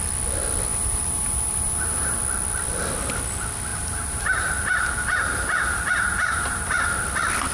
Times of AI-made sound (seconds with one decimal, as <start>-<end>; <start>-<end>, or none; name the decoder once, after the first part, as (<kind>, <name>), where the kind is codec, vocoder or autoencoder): 0.7-2.2 (vocoder, BigVGAN v2); 3.7-6.9